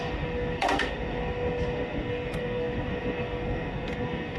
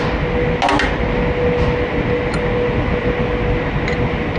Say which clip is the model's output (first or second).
first